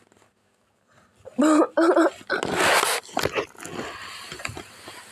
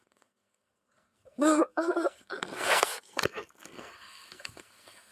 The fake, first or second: second